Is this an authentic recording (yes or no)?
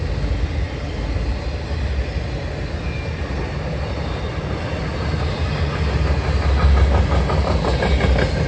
yes